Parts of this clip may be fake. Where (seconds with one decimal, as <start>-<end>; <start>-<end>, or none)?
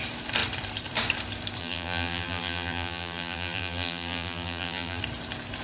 1.6-5.0